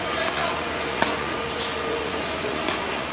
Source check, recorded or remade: remade